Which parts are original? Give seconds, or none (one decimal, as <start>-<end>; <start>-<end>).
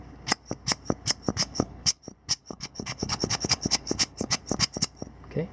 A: 0.0-1.4; 2.0-2.4; 4.4-5.5